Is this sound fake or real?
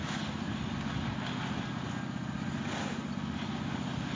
real